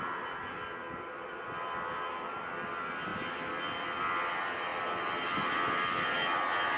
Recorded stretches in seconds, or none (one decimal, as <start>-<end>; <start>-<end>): 0.0-6.8